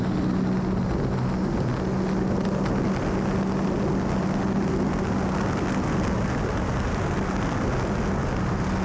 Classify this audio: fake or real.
real